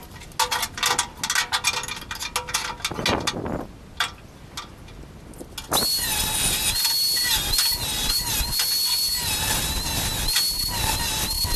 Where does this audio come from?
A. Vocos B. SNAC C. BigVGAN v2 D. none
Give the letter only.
D